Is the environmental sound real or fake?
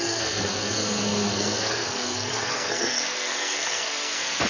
fake